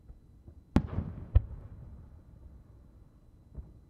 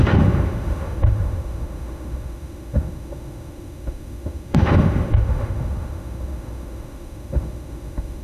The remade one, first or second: second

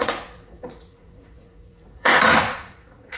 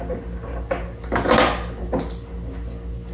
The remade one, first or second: first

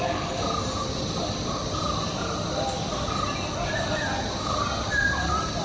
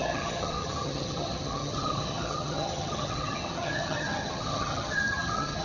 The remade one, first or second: second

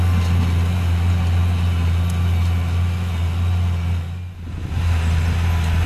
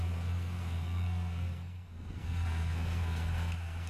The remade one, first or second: second